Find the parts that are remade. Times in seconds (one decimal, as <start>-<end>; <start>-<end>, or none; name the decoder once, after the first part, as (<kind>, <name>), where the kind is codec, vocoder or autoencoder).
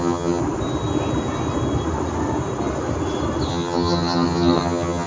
0.0-0.4 (vocoder, HiFi-GAN); 3.5-5.1